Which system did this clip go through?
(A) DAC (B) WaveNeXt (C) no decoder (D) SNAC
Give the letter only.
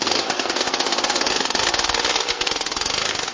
D